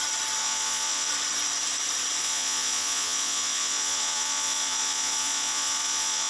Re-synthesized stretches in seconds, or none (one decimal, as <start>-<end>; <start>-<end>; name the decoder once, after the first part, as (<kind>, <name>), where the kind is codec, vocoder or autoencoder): 0.4-1.1 (vocoder, Vocos); 2.2-6.3